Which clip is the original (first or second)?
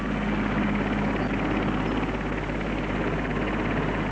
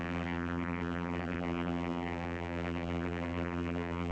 first